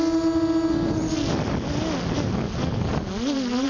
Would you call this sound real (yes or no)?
yes